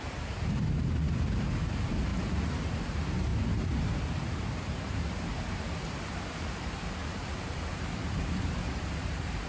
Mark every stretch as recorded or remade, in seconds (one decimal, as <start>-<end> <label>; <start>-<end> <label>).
0.0-2.1 remade; 2.1-2.8 recorded; 2.8-3.3 remade; 3.3-4.3 recorded; 4.3-9.5 remade